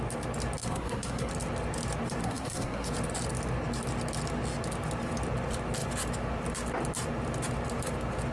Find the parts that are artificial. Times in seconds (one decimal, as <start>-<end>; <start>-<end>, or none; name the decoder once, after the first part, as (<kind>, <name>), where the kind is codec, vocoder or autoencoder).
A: 0.6-1.3 (codec, SNAC); 2.2-2.9

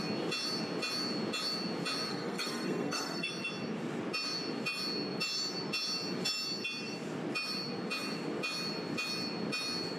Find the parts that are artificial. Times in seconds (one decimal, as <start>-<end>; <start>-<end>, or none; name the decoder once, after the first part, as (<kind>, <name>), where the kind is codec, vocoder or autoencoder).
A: 2.1-3.3 (codec, SNAC)

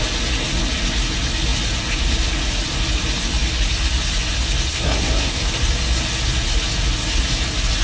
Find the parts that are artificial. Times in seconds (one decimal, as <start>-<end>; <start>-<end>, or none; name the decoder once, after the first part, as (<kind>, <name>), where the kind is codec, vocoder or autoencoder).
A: 4.7-5.4 (codec, SNAC)

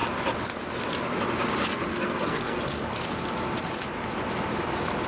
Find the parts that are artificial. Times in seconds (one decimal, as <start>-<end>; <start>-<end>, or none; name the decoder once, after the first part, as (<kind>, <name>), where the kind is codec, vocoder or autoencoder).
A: 1.9-2.6 (codec, SNAC)

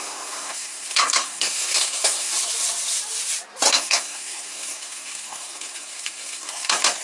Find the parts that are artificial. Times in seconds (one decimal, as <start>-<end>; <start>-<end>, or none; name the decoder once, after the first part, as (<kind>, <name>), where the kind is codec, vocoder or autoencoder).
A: 0.0-2.3 (codec, SNAC); 3.7-7.0

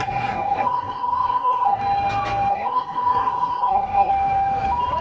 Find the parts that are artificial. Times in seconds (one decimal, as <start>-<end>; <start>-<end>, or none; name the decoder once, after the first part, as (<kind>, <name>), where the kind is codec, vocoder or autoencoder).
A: 0.0-1.8 (codec, SNAC); 2.5-4.1